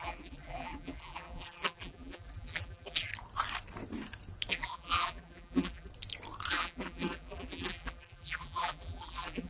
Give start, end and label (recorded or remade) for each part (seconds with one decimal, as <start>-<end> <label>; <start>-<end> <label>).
0.0-3.1 remade; 3.1-4.5 recorded; 4.5-5.9 remade; 5.9-6.5 recorded; 6.5-9.5 remade